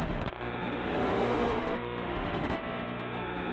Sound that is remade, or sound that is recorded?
remade